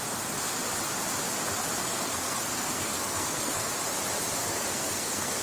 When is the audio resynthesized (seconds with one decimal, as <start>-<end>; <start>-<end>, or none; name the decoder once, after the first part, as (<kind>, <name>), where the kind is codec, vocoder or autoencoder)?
1.8-3.7 (codec, SNAC); 4.4-5.4